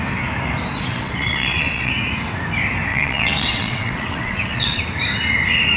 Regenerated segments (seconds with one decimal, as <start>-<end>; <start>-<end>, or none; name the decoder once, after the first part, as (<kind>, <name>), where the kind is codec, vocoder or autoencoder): 0.9-1.9 (vocoder, WaveNeXt); 2.9-4.8